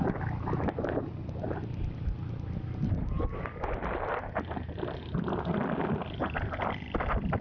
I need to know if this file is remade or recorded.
recorded